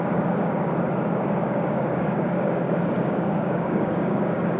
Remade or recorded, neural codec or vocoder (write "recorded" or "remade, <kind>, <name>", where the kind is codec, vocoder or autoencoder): remade, codec, DAC